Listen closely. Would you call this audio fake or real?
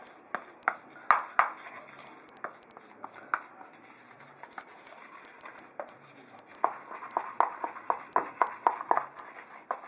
real